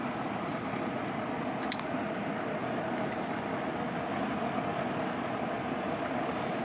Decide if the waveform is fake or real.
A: real